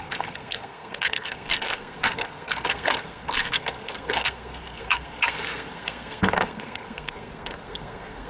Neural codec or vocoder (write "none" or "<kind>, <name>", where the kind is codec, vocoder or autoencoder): codec, SNAC